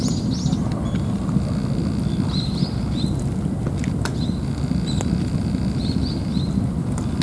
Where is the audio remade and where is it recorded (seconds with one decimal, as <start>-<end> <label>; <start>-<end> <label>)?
0.0-7.2 recorded